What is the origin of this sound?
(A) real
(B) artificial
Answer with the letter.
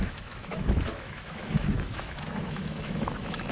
B